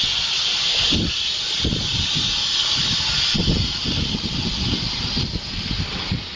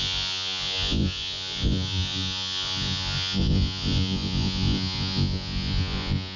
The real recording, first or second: first